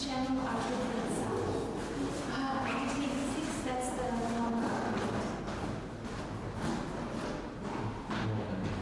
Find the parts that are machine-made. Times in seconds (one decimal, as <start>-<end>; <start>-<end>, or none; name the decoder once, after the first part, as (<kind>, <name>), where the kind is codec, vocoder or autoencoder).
none

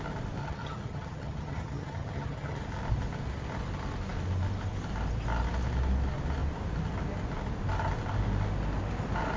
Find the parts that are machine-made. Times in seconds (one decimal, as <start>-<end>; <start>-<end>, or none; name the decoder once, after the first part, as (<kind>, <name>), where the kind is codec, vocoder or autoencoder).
0.4-2.6 (vocoder, HiFi-GAN)

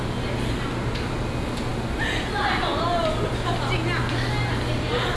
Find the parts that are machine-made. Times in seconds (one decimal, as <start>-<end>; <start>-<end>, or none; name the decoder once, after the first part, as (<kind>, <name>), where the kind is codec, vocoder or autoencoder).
none

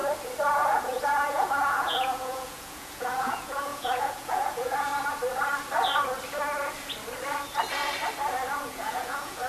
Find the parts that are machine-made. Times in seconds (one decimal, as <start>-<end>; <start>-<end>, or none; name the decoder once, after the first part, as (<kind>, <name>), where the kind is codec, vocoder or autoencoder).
0.5-4.9 (vocoder, Vocos); 8.6-9.5

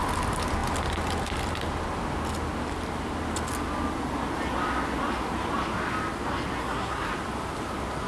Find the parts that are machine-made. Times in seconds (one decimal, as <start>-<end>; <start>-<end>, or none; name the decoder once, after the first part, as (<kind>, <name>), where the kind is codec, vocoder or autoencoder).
6.6-7.1 (codec, SNAC)

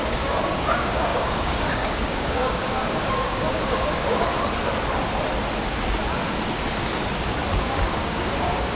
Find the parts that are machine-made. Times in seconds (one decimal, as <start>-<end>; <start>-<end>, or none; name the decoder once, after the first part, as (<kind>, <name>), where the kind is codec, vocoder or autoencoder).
0.0-4.3 (codec, DAC); 5.7-6.2; 7.5-8.7

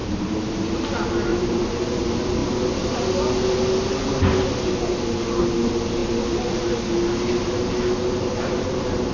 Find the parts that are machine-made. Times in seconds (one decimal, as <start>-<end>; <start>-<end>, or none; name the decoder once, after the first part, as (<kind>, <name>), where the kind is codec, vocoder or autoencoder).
0.0-0.8 (vocoder, BigVGAN v2); 1.3-2.0